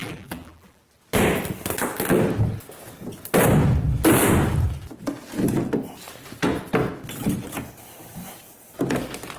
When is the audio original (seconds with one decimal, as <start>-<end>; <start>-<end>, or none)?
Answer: 0.8-9.4